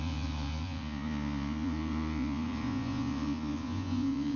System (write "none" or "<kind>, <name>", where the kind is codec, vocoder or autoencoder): vocoder, Vocos